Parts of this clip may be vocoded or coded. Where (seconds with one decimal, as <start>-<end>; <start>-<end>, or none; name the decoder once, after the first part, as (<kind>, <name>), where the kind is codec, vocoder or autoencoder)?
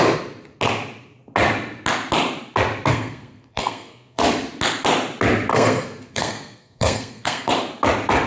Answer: 2.9-4.2 (codec, SNAC); 5.5-7.5